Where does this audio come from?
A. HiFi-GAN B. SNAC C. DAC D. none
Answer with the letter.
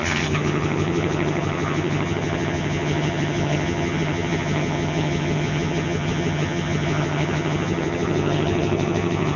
A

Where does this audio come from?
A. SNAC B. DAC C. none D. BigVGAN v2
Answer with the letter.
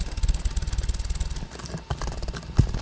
C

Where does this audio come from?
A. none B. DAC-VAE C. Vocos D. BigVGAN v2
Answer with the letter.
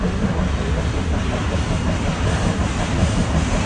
A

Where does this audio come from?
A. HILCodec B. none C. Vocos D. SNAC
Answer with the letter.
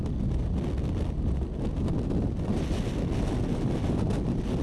B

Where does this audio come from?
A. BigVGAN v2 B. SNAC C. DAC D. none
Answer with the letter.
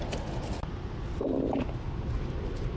D